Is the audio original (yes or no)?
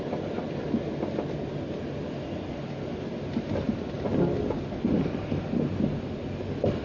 yes